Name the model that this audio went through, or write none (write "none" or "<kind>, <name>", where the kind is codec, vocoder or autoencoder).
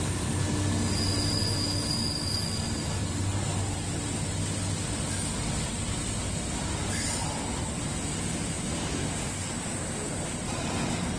none